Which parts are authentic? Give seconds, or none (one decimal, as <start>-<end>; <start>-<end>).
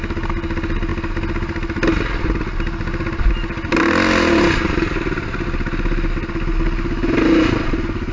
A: 0.0-8.1